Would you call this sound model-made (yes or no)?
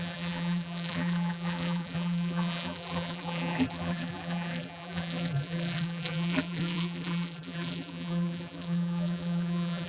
yes